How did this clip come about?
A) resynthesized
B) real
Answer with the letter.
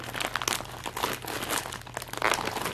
B